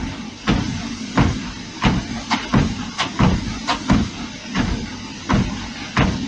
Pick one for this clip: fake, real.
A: real